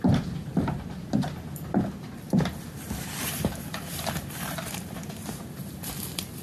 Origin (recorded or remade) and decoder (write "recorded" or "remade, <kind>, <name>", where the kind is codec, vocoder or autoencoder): recorded